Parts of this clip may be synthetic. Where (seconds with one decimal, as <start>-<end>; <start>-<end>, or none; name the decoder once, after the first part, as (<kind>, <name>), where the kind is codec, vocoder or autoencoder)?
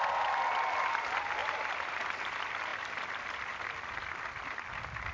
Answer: none